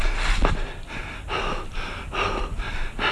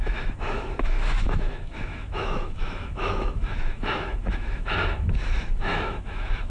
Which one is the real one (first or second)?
first